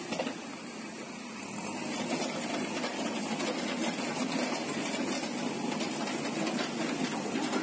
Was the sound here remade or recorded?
recorded